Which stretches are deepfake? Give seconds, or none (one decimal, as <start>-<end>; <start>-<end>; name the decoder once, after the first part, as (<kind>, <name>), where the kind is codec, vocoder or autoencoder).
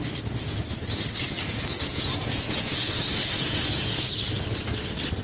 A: 1.9-4.4 (vocoder, Vocos)